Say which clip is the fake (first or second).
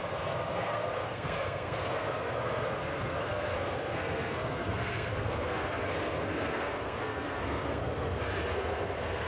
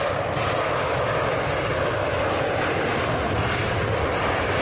first